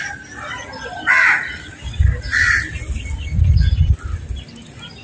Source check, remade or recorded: recorded